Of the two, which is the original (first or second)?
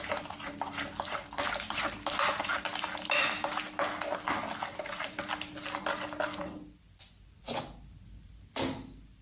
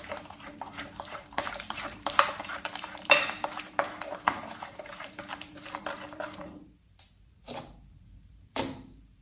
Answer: first